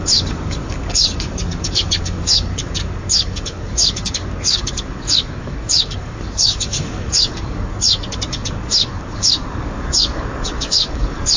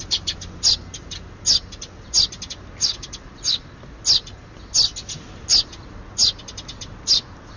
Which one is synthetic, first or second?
first